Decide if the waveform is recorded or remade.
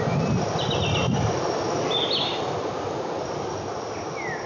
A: recorded